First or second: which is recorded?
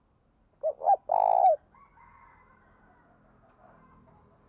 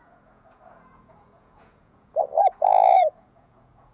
first